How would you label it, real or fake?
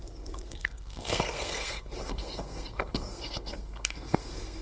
fake